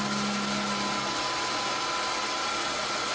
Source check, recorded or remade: recorded